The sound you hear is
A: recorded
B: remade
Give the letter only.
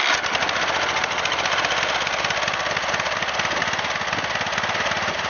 A